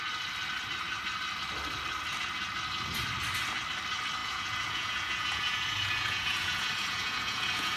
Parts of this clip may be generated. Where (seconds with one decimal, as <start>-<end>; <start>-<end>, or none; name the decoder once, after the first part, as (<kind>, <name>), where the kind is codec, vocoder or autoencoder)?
4.2-7.8 (vocoder, Vocos)